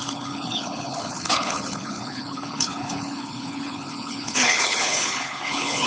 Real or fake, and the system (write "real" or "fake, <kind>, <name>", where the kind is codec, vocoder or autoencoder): fake, codec, HILCodec